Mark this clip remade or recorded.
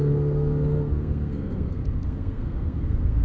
remade